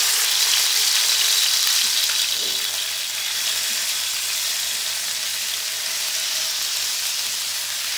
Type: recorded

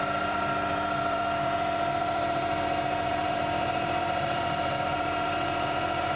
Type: remade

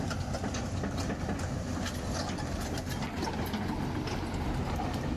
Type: recorded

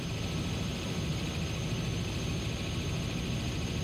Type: recorded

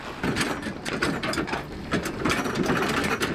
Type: recorded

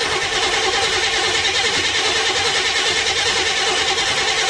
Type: remade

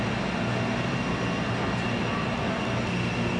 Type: recorded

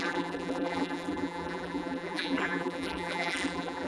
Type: remade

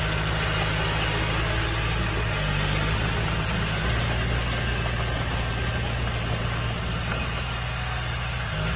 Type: recorded